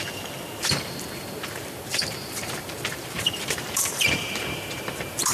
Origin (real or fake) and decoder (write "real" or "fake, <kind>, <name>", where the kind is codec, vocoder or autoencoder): fake, vocoder, BigVGAN v2